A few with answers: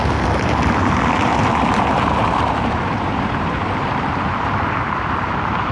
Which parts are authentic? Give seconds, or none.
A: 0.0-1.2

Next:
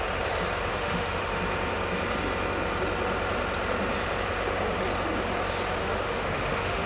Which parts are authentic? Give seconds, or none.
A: 0.0-0.7; 1.2-5.8

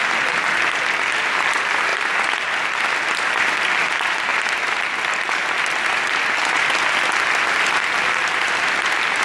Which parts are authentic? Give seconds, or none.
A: 0.0-9.2

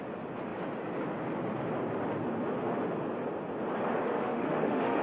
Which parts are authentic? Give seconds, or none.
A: 0.0-4.1

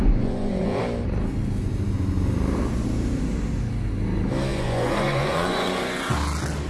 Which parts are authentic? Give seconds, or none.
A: 0.8-4.5; 6.1-6.7

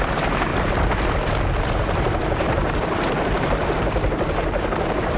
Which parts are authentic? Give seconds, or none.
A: 0.5-1.8